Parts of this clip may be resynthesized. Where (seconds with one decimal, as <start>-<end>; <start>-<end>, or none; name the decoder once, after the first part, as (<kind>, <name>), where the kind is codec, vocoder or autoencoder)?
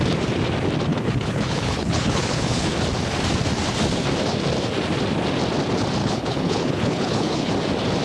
0.9-2.7 (codec, HILCodec); 6.0-7.5